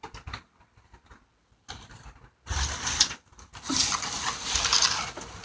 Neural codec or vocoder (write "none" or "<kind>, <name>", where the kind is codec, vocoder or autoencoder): none